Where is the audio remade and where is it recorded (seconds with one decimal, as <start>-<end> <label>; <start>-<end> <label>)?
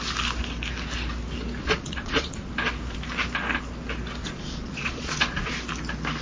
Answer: 0.0-1.6 recorded; 1.6-2.5 remade; 2.5-4.2 recorded; 4.2-5.5 remade; 5.5-6.2 recorded